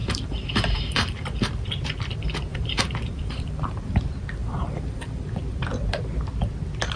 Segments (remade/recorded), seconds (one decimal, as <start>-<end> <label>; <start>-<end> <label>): 0.0-1.4 remade; 1.4-2.5 recorded; 2.5-4.0 remade; 4.0-4.4 recorded; 4.4-5.3 remade; 5.3-7.0 recorded